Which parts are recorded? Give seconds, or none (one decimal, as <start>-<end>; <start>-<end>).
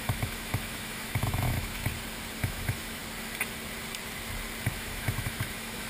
1.8-2.4; 3.0-4.7